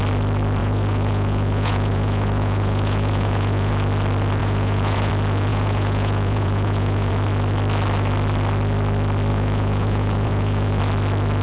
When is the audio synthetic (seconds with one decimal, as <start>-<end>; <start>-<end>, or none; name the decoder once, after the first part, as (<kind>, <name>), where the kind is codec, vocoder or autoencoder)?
0.6-3.7 (vocoder, Vocos); 4.4-5.1; 5.5-7.1; 9.3-10.8